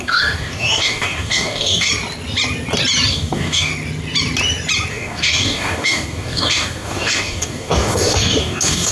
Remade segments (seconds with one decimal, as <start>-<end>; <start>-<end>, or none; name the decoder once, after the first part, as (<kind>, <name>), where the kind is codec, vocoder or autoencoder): 0.0-1.9 (codec, DAC); 3.1-3.7; 4.9-8.9